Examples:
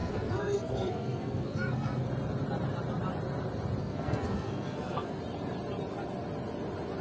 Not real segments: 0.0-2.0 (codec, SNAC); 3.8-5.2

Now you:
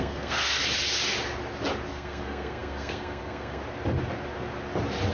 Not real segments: 0.0-0.6 (codec, SNAC); 1.9-3.6

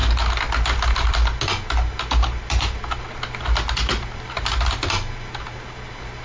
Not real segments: none

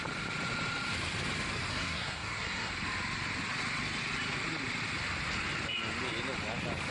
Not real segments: 1.7-2.7 (codec, SNAC)

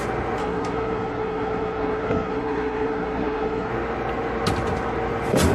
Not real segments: 0.4-3.7 (codec, SNAC)

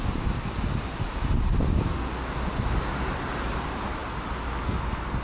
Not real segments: none